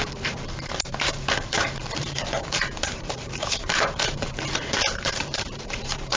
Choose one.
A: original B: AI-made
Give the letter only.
B